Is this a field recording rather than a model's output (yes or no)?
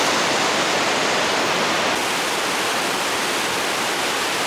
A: yes